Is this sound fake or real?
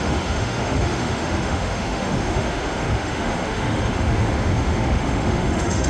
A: fake